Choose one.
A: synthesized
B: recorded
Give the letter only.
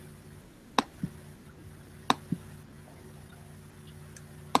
B